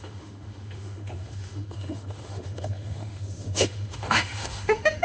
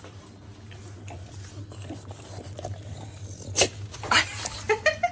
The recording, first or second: second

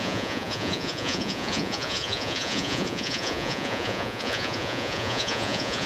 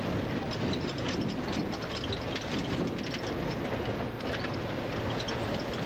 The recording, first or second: second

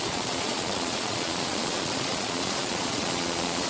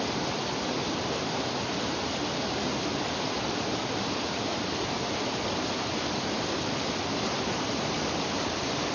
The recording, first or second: second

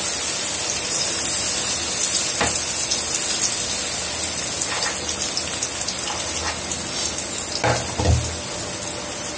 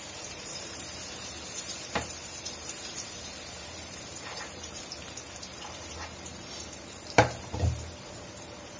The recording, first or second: first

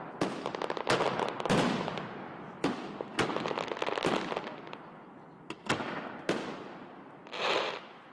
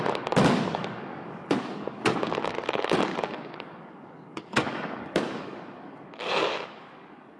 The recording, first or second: first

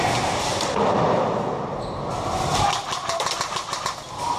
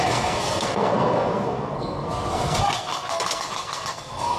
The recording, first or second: first